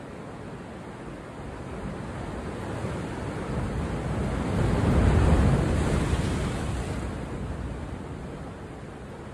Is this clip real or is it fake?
real